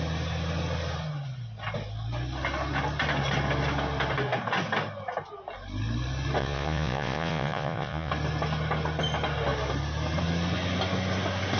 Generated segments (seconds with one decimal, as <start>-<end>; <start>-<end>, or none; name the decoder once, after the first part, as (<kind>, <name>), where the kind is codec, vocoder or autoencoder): 6.4-8.1 (vocoder, Vocos)